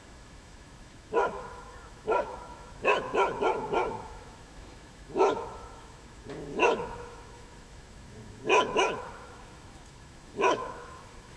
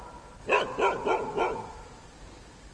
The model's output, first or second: first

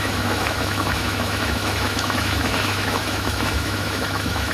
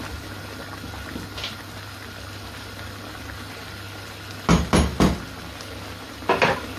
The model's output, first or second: first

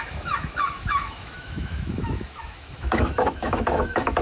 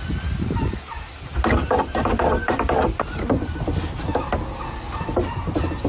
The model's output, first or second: first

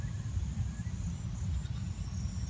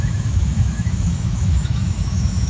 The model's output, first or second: second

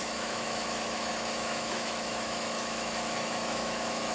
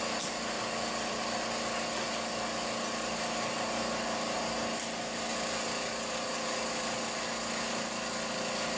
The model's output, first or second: first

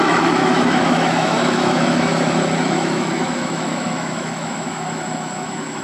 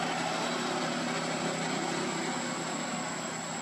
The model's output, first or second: first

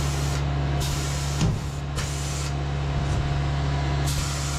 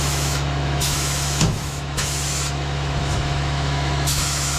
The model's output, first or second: second